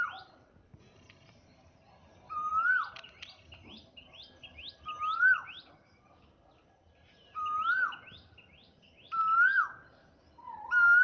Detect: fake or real real